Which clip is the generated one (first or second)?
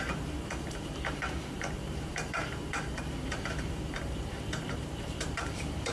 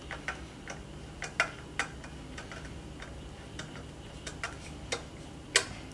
first